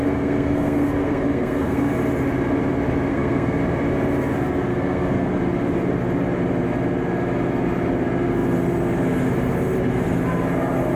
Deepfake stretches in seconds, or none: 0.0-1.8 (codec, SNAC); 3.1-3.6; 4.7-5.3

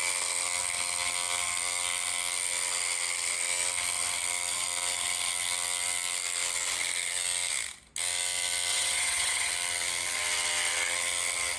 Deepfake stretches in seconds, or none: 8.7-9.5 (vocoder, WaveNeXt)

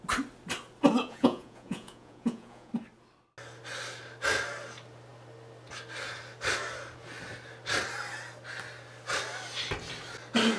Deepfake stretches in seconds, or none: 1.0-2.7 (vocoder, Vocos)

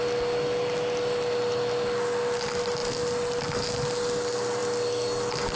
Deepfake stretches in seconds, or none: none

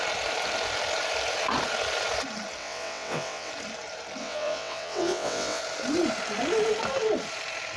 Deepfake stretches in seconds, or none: 2.6-3.5 (vocoder, WaveNeXt); 4.2-5.6

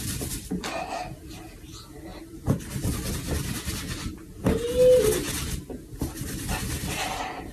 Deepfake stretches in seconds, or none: 2.1-2.9 (vocoder, BigVGAN v2)